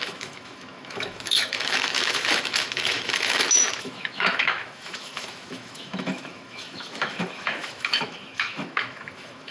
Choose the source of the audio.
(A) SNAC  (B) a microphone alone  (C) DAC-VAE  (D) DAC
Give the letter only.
C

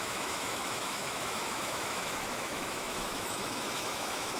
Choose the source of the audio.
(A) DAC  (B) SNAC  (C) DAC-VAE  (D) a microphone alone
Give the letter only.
C